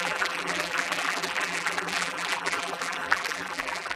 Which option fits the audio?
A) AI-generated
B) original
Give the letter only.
A